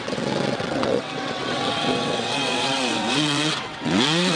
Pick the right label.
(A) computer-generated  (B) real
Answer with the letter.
A